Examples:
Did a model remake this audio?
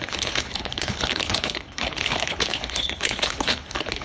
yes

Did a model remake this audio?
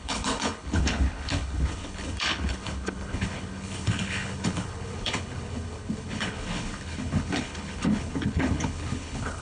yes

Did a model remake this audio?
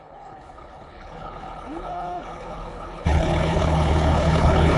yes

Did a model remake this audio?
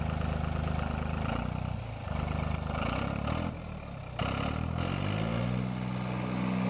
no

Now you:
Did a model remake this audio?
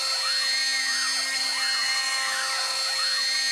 no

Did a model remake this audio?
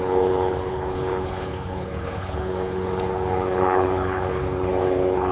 yes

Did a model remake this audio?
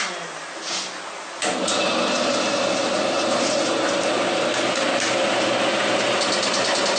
no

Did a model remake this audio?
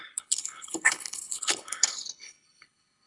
yes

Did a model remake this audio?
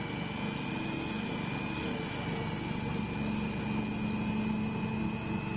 no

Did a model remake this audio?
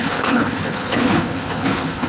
yes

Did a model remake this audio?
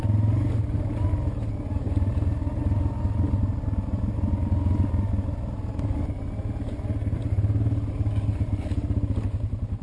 no